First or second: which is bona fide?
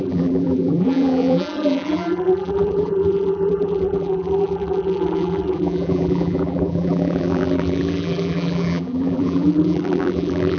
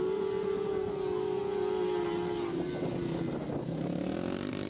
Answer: second